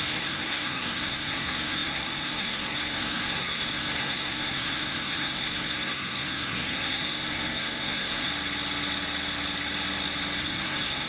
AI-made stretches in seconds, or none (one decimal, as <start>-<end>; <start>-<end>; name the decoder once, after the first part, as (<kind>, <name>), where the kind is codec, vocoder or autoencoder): 0.0-8.3 (codec, SNAC); 10.4-11.1